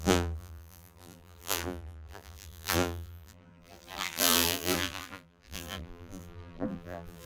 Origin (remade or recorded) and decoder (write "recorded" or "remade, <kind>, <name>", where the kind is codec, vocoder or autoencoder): remade, vocoder, BigVGAN v2